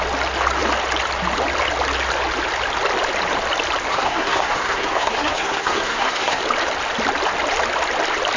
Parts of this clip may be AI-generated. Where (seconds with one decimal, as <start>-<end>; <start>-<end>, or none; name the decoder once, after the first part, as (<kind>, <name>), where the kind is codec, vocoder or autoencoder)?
3.9-6.4 (codec, SNAC)